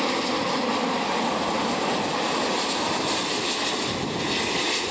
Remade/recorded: recorded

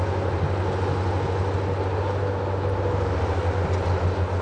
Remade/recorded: recorded